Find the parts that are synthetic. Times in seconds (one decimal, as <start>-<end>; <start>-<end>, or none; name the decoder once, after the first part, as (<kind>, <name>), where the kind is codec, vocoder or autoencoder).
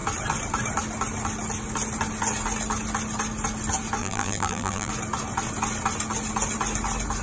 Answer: 4.0-4.9 (vocoder, BigVGAN v2)